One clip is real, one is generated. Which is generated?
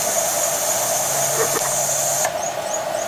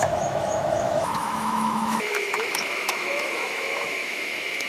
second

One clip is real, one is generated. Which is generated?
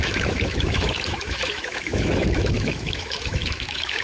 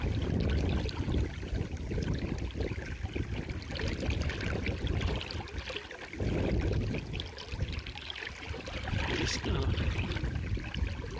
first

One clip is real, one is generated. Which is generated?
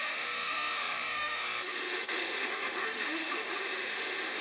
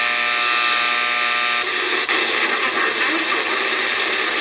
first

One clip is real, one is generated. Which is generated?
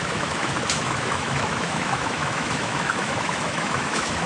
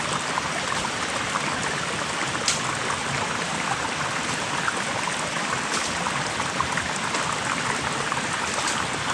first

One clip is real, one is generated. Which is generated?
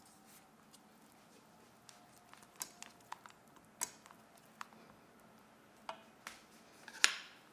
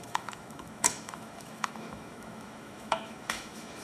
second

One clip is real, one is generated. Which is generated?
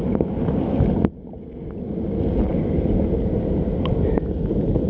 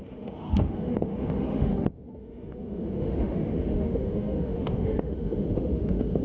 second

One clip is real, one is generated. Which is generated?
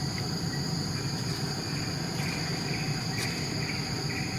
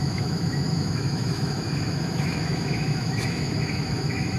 second